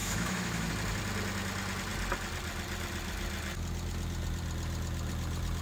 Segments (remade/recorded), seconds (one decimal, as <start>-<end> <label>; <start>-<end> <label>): 0.0-0.7 remade; 0.7-5.6 recorded

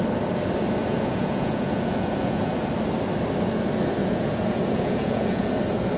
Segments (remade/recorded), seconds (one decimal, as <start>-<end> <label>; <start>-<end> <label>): 0.0-0.8 recorded; 0.8-2.5 remade; 2.5-4.0 recorded; 4.0-5.5 remade; 5.5-6.0 recorded

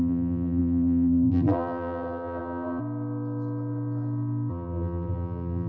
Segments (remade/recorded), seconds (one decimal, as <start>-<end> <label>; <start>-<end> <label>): 0.0-2.8 remade; 2.8-4.5 recorded; 4.5-5.7 remade

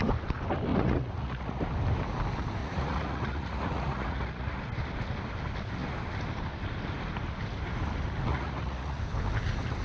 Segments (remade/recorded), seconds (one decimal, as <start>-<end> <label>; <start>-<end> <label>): 0.0-0.7 recorded; 0.7-1.6 remade; 1.6-2.6 recorded; 2.6-4.6 remade; 4.6-8.3 recorded; 8.3-9.0 remade; 9.0-9.8 recorded

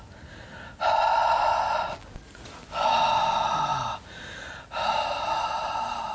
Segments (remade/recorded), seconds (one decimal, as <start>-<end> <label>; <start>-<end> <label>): 0.0-6.1 recorded

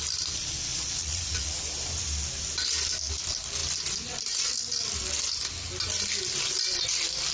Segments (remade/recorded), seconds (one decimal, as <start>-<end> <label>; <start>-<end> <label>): 0.0-0.7 recorded; 0.7-1.6 remade; 1.6-7.3 recorded